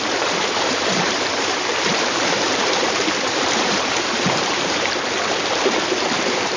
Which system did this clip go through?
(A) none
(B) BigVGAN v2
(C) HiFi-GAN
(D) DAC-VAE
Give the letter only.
B